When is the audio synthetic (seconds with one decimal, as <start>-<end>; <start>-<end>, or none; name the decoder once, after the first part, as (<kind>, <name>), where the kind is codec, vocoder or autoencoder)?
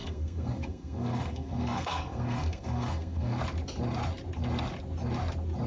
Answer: 0.0-3.4 (codec, SNAC)